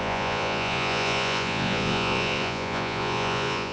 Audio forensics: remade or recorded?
remade